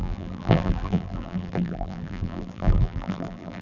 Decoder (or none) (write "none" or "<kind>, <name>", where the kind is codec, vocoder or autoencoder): vocoder, BigVGAN v2